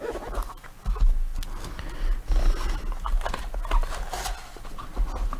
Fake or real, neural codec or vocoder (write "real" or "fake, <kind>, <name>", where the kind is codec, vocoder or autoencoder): real